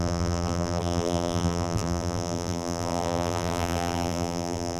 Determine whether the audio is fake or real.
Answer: fake